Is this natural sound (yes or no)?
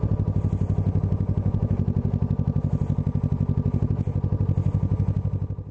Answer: yes